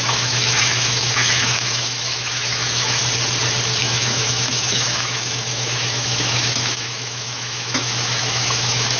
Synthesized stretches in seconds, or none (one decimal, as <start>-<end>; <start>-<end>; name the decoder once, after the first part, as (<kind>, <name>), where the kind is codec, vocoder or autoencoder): 0.0-3.0 (autoencoder, DAC-VAE); 3.8-9.0

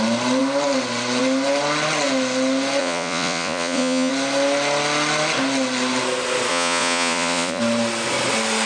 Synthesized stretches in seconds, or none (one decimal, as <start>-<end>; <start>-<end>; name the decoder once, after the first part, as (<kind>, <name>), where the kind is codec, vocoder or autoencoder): 2.8-4.1 (vocoder, Vocos); 6.5-7.6

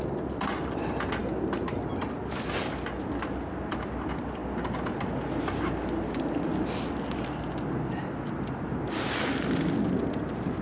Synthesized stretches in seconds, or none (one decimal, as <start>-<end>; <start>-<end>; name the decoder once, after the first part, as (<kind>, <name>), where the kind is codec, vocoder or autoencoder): none